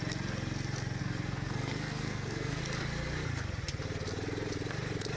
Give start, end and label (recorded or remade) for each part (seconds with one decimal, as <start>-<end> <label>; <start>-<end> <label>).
0.0-1.0 recorded; 1.0-2.6 remade; 2.6-5.2 recorded